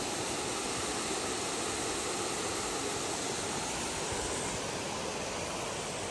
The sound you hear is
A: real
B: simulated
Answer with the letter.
A